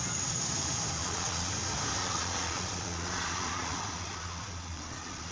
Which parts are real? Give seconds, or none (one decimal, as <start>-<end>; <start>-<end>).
0.0-1.0; 1.5-2.0